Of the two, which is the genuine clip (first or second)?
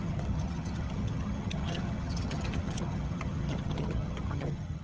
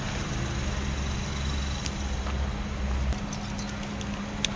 second